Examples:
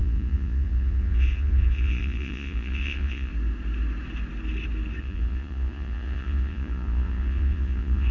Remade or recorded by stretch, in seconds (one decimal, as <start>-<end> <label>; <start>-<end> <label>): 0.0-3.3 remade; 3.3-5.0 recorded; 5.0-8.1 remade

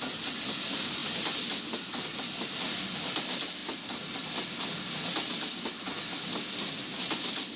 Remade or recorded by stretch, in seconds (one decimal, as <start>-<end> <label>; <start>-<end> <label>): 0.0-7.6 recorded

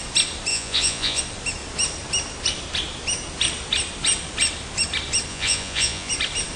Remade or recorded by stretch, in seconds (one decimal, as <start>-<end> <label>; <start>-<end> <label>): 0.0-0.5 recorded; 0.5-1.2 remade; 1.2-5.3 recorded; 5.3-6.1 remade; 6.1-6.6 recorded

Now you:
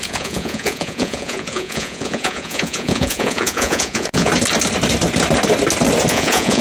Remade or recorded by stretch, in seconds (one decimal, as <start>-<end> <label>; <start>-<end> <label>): 0.0-4.3 remade; 4.3-6.1 recorded; 6.1-6.6 remade

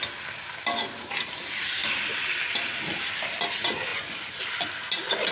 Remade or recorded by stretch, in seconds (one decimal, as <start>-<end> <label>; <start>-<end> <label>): 0.0-3.9 recorded; 3.9-4.4 remade; 4.4-5.3 recorded

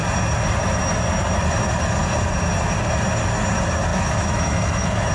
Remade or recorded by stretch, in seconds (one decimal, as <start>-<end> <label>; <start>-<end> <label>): 0.0-3.9 recorded; 3.9-5.1 remade

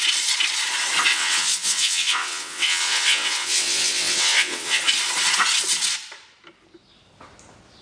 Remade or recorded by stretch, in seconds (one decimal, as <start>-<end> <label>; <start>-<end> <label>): 0.0-1.1 recorded; 1.1-4.8 remade; 4.8-7.8 recorded

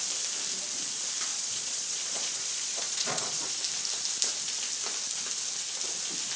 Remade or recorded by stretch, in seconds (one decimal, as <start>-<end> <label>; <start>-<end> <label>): 0.0-1.3 recorded; 1.3-3.6 remade; 3.6-6.4 recorded